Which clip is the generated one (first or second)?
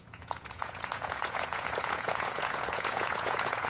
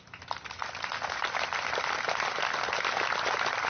first